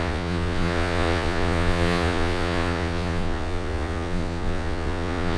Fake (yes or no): yes